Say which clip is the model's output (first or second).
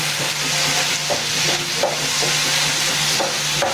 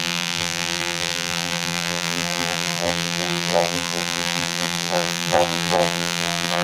second